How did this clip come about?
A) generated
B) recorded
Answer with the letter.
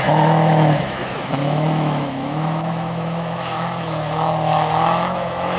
A